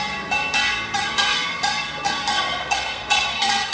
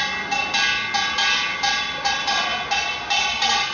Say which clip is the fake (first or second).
first